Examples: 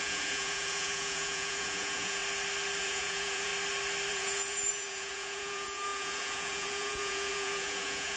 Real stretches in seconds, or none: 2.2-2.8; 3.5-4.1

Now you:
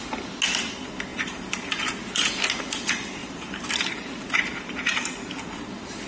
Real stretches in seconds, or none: 0.0-1.1; 2.3-3.2; 5.3-6.1